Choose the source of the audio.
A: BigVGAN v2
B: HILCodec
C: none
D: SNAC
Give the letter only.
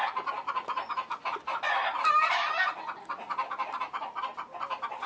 C